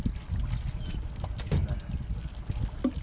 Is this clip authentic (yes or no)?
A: yes